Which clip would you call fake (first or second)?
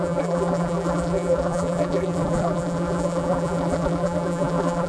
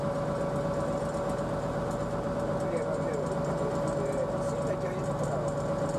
first